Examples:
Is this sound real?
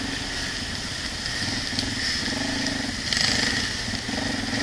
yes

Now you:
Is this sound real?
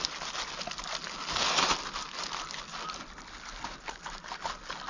yes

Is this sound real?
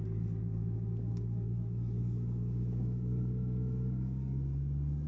no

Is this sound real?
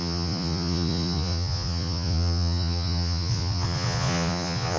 no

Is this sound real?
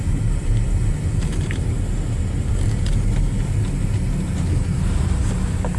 yes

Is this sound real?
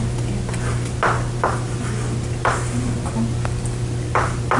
yes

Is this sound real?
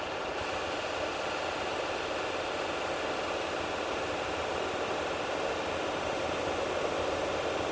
yes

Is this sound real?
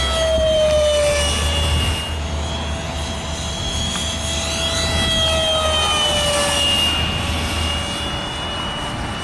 yes